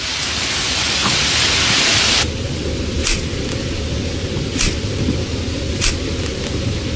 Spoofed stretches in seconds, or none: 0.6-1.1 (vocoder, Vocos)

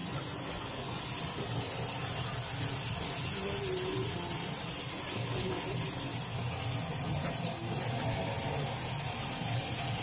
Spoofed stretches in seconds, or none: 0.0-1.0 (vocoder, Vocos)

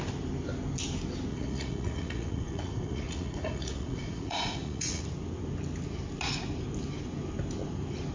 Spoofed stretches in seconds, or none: 1.3-5.0 (vocoder, Vocos)

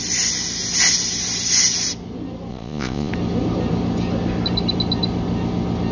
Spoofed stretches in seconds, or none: 2.5-3.1 (vocoder, Vocos)

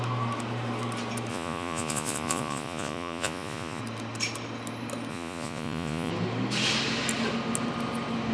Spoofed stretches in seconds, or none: 1.3-3.8 (vocoder, Vocos); 5.1-6.1

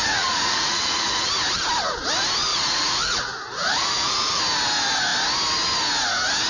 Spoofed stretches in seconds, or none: 0.0-1.3 (vocoder, Vocos); 2.5-4.4